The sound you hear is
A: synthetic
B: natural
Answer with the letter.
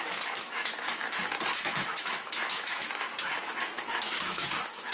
A